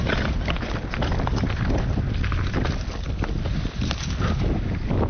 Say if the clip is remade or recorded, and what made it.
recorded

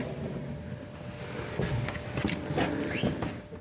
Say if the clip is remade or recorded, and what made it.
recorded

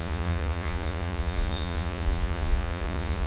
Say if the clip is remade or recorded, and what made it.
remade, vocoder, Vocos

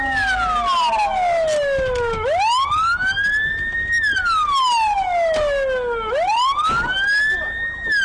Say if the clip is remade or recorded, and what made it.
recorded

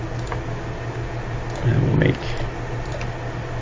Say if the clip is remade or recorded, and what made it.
recorded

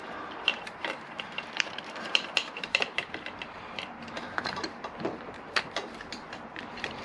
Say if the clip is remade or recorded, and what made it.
remade, vocoder, BigVGAN v2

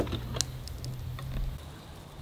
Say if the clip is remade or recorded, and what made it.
recorded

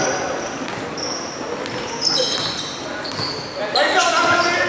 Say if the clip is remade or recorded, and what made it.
recorded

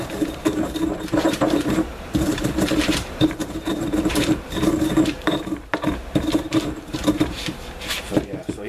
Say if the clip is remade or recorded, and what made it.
remade, vocoder, BigVGAN v2